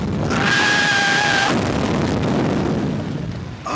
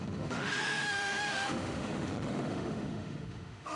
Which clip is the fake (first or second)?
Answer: second